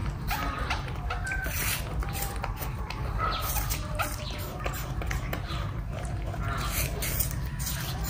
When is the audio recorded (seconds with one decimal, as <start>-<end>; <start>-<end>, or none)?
4.3-8.1